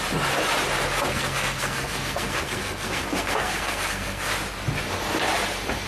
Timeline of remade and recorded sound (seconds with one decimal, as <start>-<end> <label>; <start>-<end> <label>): 0.0-1.1 recorded; 1.1-4.3 remade; 4.3-5.9 recorded

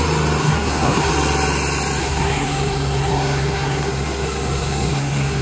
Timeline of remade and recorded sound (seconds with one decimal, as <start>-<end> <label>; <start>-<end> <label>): 0.0-0.4 recorded; 0.4-1.1 remade; 1.1-2.0 recorded; 2.0-5.4 remade

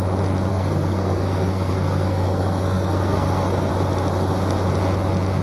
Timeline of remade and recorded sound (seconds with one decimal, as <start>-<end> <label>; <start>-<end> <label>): 0.0-0.5 recorded; 0.5-3.7 remade; 3.7-5.4 recorded

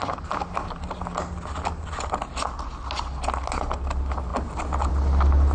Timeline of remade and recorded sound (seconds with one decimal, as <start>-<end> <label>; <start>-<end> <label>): 0.0-5.5 recorded

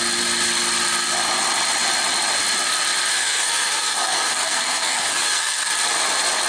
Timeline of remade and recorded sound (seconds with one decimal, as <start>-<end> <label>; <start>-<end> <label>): 0.0-3.1 recorded; 3.1-5.7 remade; 5.7-6.5 recorded

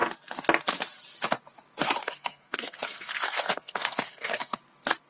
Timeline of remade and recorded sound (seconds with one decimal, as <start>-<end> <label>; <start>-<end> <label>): 0.0-2.0 recorded; 2.0-4.6 remade; 4.6-5.1 recorded

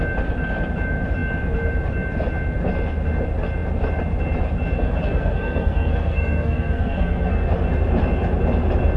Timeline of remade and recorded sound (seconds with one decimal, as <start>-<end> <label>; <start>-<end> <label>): 0.0-5.0 recorded; 5.0-7.5 remade; 7.5-9.0 recorded

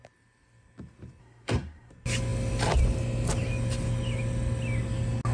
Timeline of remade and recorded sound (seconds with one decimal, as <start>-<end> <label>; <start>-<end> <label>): 0.0-1.2 recorded; 1.2-1.9 remade; 1.9-5.3 recorded